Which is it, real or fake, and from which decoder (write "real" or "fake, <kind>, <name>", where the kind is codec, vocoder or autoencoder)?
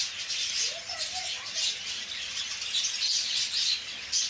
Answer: real